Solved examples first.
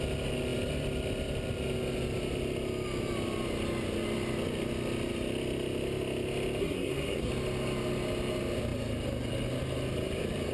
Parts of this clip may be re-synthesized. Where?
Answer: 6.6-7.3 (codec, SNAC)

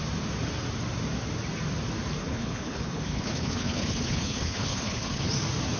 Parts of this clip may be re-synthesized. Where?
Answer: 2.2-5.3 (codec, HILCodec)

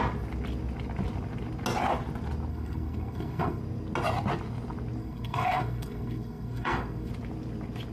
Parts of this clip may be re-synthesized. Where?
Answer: 2.5-3.6 (codec, SNAC); 5.0-7.1

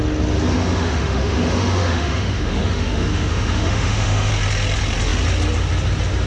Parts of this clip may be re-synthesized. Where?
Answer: 0.5-4.3 (autoencoder, DAC-VAE)

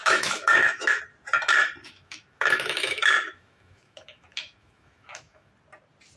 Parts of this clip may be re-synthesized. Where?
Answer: 0.0-1.0 (autoencoder, DAC-VAE); 1.8-5.5

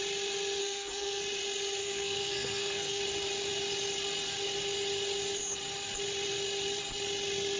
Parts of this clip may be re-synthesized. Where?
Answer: 0.6-1.2 (codec, SNAC); 1.8-3.0

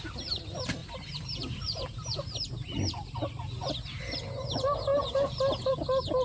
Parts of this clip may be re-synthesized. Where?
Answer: none

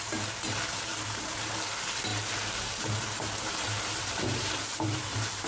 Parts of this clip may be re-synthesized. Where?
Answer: 0.9-1.5 (vocoder, BigVGAN v2); 2.1-5.5